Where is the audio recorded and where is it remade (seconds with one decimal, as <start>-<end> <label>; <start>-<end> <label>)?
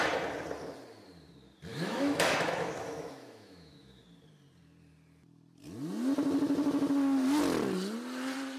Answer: 0.0-1.7 recorded; 1.7-4.0 remade; 4.0-8.6 recorded